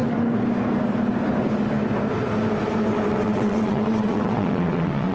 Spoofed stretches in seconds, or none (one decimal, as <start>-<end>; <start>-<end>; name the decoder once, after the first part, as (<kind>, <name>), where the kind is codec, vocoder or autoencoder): 3.1-5.1 (vocoder, WaveNeXt)